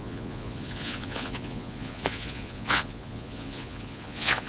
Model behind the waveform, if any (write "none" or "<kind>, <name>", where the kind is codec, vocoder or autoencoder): vocoder, Vocos